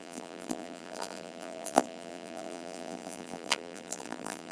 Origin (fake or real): fake